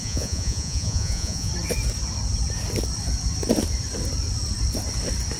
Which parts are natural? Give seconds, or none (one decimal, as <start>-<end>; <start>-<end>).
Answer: 1.5-5.4

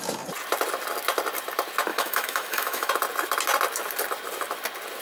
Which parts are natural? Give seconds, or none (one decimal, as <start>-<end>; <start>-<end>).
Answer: 0.0-1.9; 2.9-5.0

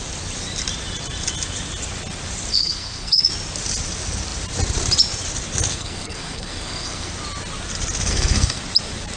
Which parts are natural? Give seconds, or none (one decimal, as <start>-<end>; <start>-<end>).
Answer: 0.0-2.5; 3.3-5.7; 7.1-8.1; 8.6-9.2

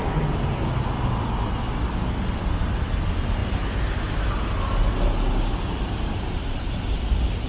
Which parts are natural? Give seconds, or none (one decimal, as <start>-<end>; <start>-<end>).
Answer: 0.0-7.5

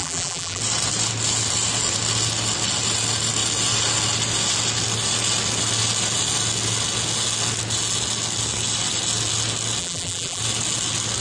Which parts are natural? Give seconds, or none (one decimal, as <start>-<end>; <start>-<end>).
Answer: 0.6-9.8; 10.4-11.2

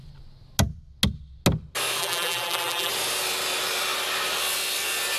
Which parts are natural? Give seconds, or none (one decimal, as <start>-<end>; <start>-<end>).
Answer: 0.0-2.0; 2.9-5.2

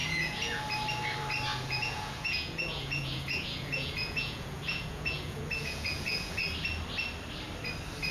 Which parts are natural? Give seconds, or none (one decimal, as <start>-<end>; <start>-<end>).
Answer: 0.6-1.5; 6.4-8.1

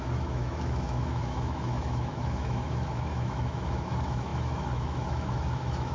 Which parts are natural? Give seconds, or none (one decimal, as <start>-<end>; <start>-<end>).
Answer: none